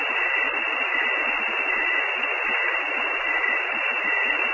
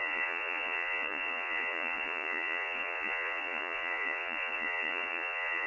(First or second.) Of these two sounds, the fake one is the second